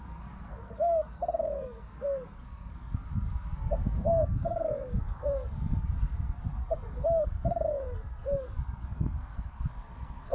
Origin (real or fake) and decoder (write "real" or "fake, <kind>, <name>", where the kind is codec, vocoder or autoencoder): fake, codec, SNAC